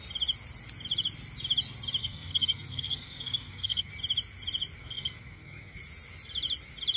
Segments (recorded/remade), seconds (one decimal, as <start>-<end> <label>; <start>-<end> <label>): 0.0-2.0 recorded; 2.0-3.9 remade; 3.9-4.8 recorded; 4.8-5.8 remade; 5.8-7.0 recorded